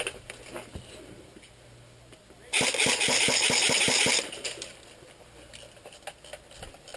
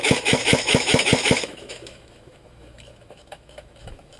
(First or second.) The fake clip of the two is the second